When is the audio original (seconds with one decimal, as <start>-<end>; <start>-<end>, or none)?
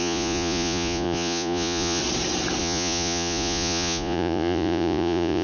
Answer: 2.0-2.6